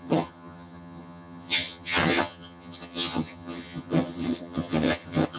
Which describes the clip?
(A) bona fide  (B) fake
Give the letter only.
B